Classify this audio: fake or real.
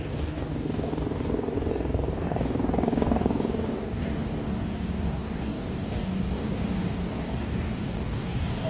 fake